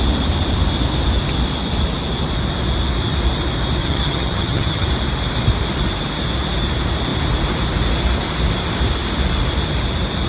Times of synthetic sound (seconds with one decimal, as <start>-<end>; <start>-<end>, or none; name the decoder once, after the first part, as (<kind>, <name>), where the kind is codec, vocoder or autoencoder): 3.8-4.9 (vocoder, HiFi-GAN)